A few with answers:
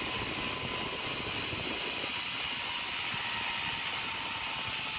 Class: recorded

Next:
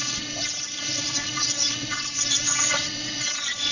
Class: remade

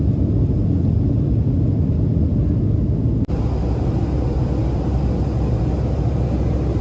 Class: recorded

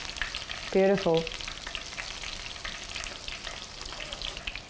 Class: recorded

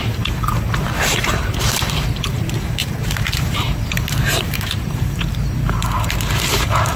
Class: remade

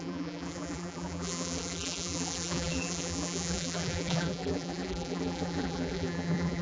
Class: remade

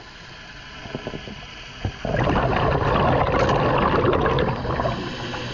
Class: recorded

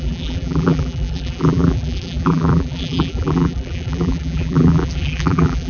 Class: remade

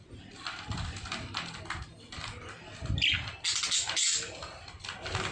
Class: recorded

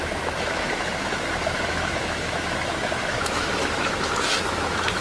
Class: remade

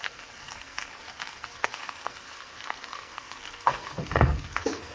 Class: remade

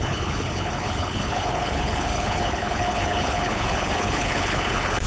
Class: remade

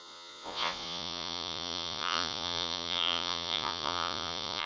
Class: remade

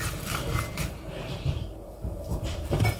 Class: remade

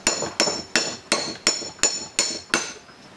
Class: recorded